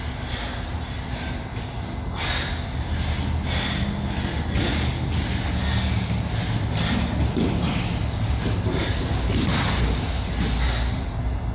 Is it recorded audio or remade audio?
recorded